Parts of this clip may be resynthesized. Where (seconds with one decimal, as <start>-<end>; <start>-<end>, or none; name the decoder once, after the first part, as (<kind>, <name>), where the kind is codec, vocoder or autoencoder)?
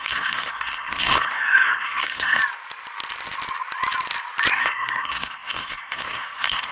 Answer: 0.0-2.4 (codec, SNAC); 4.5-6.7